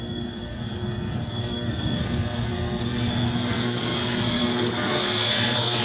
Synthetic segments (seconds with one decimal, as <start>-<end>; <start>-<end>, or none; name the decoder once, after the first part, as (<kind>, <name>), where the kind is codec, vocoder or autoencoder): 0.0-5.8 (codec, SNAC)